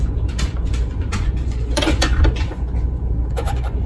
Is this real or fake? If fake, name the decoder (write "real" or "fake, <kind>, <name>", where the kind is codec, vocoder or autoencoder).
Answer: fake, vocoder, Vocos